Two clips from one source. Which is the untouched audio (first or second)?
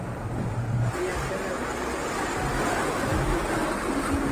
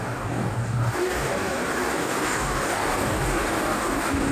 first